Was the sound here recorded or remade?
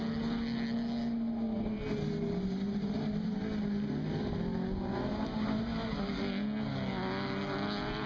recorded